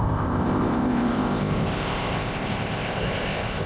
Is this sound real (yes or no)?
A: no